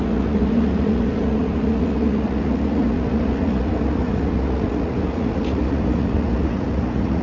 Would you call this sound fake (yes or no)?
yes